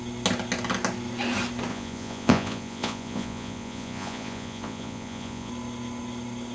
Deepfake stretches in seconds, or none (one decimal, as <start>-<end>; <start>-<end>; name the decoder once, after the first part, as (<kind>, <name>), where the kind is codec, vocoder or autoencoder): 1.7-5.5 (vocoder, Vocos)